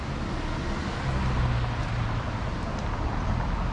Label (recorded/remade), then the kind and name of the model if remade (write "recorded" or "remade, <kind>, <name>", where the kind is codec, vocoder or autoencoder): recorded